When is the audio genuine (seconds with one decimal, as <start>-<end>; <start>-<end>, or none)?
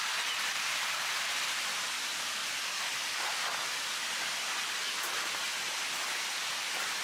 0.0-0.5; 1.8-7.0